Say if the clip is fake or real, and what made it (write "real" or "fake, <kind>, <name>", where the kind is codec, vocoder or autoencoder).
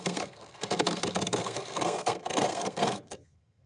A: fake, codec, SNAC